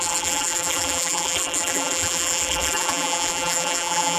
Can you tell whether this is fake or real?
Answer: fake